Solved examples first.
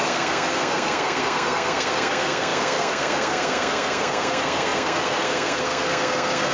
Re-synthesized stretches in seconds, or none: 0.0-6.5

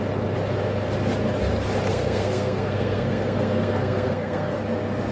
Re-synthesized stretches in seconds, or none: 1.9-4.6

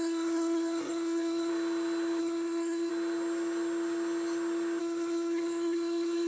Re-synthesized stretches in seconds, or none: 0.0-1.5; 2.2-2.9; 4.8-6.3

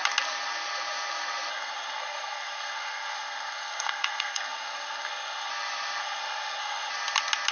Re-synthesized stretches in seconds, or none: 1.5-5.5; 6.0-6.9

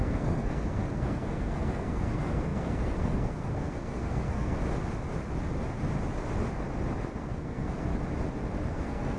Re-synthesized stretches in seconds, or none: 0.0-4.6; 7.2-7.9; 8.7-9.2

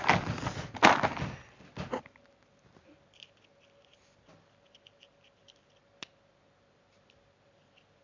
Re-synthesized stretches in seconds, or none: none

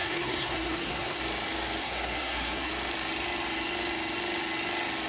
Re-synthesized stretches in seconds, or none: 0.0-1.2; 1.8-2.7